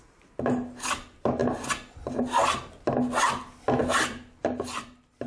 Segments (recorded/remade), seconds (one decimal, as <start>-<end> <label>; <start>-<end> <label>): 0.0-5.3 recorded

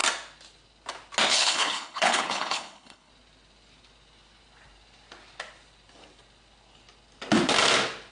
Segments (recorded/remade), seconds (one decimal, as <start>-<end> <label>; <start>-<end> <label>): 0.0-1.3 recorded; 1.3-3.1 remade; 3.1-8.1 recorded